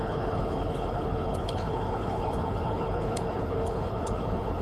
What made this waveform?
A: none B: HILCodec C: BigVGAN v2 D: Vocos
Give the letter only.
B